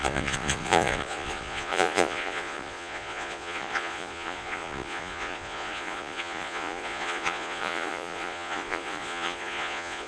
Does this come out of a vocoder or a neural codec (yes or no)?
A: yes